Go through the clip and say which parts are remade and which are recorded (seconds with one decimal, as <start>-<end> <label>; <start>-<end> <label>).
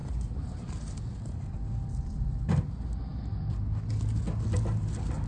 0.0-5.3 recorded